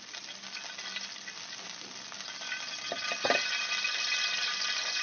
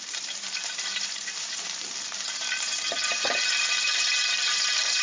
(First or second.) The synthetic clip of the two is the second